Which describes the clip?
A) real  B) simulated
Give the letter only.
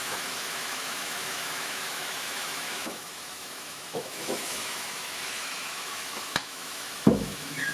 B